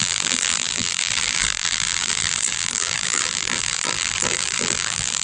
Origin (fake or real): fake